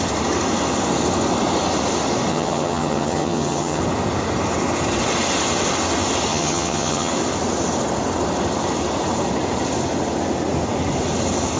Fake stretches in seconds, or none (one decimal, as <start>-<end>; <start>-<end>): 2.3-3.8; 6.3-7.1